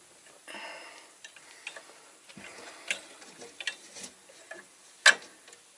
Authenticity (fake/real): real